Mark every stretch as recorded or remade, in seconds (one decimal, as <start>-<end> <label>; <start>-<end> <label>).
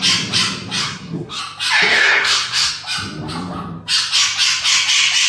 0.0-0.8 recorded; 0.8-1.4 remade; 1.4-1.9 recorded; 1.9-2.7 remade; 2.7-5.3 recorded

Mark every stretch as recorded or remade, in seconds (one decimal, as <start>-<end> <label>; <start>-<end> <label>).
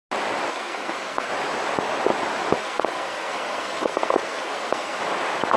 0.0-0.5 recorded; 0.5-1.3 remade; 1.3-2.6 recorded; 2.6-5.0 remade; 5.0-5.6 recorded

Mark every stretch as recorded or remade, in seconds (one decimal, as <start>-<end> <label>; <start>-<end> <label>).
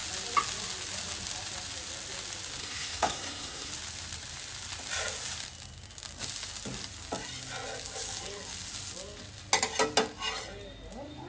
0.0-2.6 recorded; 2.6-3.7 remade; 3.7-11.3 recorded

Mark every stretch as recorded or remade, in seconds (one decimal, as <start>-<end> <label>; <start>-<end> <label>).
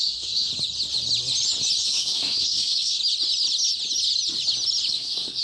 0.0-0.5 remade; 0.5-1.8 recorded; 1.8-3.0 remade; 3.0-4.9 recorded; 4.9-5.4 remade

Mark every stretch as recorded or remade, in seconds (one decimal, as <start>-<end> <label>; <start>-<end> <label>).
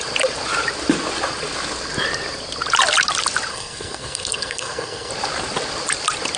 0.0-3.5 recorded; 3.5-5.1 remade; 5.1-6.4 recorded